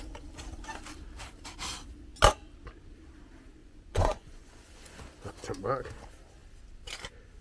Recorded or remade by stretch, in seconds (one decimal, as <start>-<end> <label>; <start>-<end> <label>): 0.0-3.6 recorded; 3.6-5.0 remade; 5.0-7.4 recorded